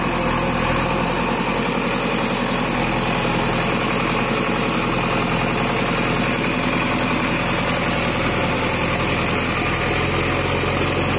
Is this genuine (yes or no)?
yes